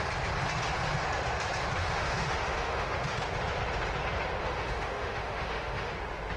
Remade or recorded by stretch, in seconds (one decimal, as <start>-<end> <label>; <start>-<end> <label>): 0.0-1.8 recorded; 1.8-3.2 remade; 3.2-4.4 recorded; 4.4-5.9 remade; 5.9-6.4 recorded